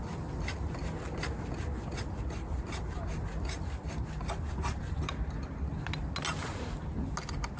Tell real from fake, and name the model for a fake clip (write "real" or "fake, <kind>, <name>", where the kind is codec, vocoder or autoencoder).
real